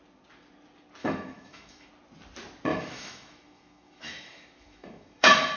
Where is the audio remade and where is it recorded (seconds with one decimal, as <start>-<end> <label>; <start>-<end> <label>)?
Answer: 0.0-1.0 recorded; 1.0-1.9 remade; 1.9-2.7 recorded; 2.7-5.6 remade

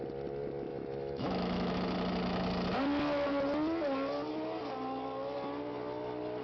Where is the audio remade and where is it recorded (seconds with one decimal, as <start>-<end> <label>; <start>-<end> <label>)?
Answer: 0.0-0.7 recorded; 0.7-1.8 remade; 1.8-6.4 recorded

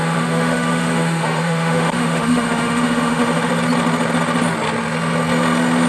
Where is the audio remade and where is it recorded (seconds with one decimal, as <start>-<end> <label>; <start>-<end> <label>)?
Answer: 0.0-3.5 remade; 3.5-5.9 recorded